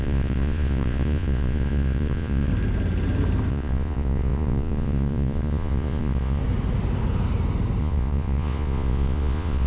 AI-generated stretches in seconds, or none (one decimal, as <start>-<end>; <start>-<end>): 0.0-2.5; 3.5-6.4; 7.8-9.7